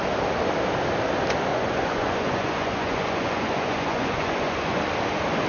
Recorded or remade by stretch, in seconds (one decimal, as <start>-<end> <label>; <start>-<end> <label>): 0.0-1.5 recorded; 1.5-4.8 remade; 4.8-5.5 recorded